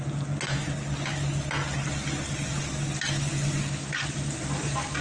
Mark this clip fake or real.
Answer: real